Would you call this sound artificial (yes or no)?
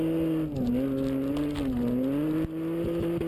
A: no